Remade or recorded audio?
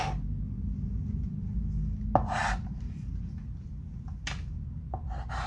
recorded